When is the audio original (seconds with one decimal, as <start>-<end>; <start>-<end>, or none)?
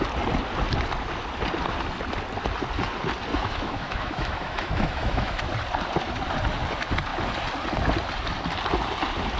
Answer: 0.0-3.3; 5.5-9.4